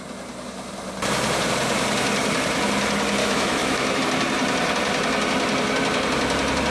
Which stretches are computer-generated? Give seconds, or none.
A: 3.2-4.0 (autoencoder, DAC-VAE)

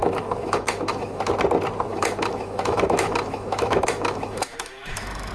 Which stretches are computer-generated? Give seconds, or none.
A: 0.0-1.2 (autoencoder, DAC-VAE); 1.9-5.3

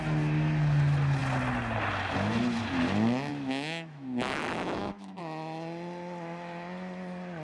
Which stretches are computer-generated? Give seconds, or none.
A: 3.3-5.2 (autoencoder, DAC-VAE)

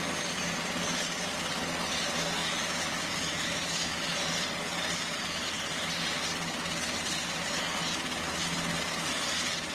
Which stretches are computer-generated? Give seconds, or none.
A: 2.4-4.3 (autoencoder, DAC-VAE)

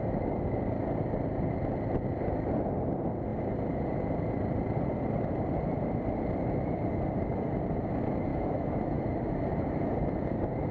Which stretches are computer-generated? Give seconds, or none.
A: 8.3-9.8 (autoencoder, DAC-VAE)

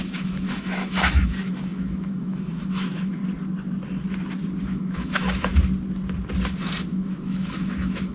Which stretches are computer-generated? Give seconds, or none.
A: 0.0-3.2 (autoencoder, DAC-VAE); 4.6-5.5; 6.9-8.1

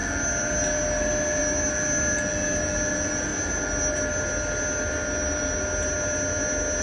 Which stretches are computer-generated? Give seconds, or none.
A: none

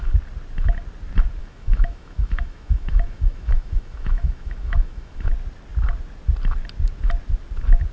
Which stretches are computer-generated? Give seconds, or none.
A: 1.4-5.2 (autoencoder, DAC-VAE)